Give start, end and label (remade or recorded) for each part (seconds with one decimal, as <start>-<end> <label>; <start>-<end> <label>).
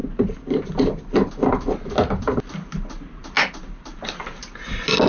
0.0-5.1 recorded